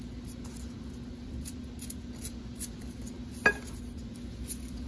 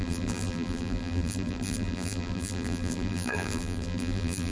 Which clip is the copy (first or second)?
second